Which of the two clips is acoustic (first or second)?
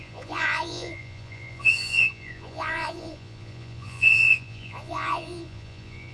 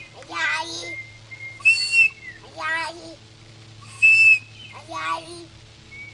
second